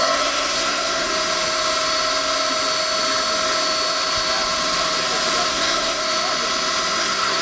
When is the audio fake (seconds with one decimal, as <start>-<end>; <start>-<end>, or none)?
0.0-1.1; 5.5-6.0; 7.0-7.4